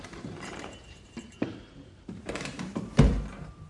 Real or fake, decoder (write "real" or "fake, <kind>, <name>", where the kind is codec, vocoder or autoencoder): fake, vocoder, BigVGAN v2